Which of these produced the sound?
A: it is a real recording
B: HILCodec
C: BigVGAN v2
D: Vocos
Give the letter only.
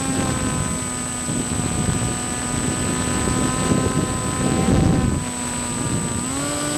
A